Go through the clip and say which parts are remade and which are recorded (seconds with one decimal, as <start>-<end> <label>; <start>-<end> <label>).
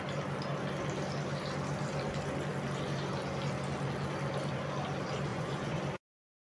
0.0-5.3 recorded; 5.3-5.8 remade; 5.8-6.5 recorded